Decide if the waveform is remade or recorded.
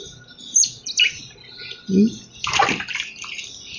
recorded